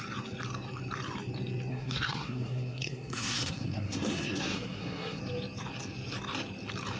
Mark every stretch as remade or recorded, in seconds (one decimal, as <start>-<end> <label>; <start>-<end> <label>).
0.0-1.7 recorded; 1.7-5.2 remade; 5.2-7.0 recorded